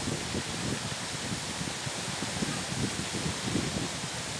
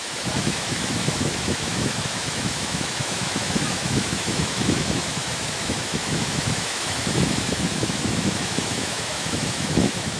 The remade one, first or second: second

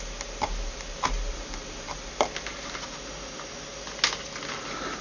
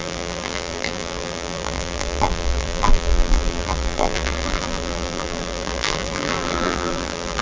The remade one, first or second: second